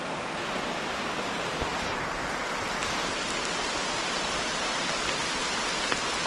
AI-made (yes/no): no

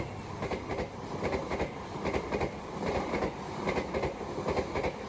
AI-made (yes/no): no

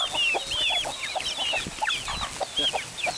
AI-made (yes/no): no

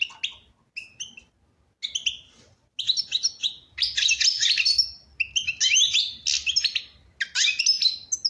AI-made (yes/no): no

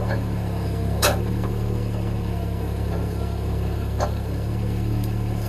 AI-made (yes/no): yes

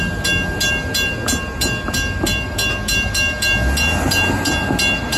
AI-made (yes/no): no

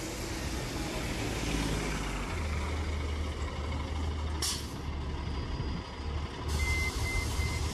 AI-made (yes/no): no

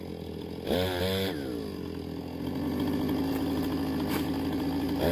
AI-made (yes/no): no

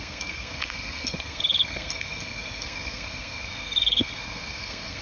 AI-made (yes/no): yes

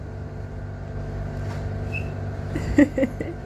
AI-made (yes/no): no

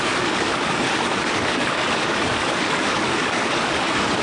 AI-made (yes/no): yes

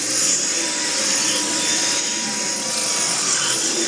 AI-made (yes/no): no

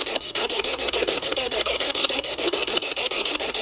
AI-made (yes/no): yes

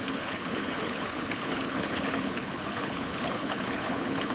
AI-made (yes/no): yes